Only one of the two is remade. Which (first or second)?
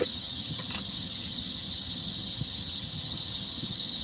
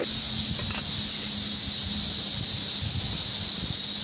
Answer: first